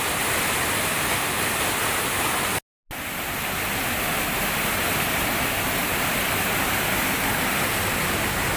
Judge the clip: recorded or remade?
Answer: recorded